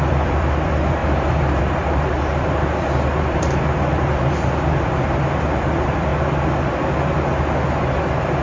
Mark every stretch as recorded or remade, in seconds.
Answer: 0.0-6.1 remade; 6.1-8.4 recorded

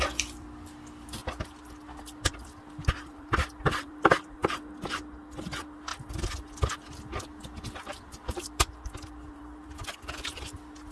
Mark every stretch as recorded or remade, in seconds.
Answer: 0.0-1.2 remade; 1.2-2.3 recorded; 2.3-4.4 remade; 4.4-5.2 recorded; 5.2-5.9 remade; 5.9-8.0 recorded; 8.0-10.9 remade

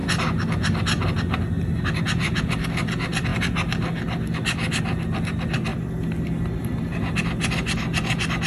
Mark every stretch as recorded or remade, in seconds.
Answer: 0.0-8.5 recorded

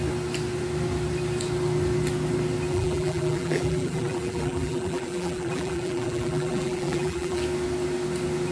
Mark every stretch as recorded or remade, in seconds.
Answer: 0.0-2.7 recorded; 2.7-7.4 remade; 7.4-8.5 recorded